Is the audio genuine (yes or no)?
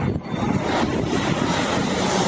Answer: yes